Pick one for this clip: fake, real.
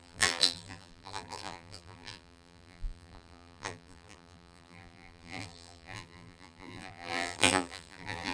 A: fake